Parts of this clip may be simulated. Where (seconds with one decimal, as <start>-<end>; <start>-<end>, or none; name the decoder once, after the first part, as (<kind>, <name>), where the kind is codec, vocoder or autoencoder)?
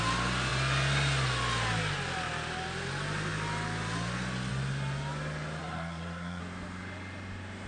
5.6-6.4 (codec, SNAC)